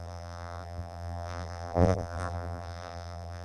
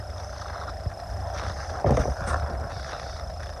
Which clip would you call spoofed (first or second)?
first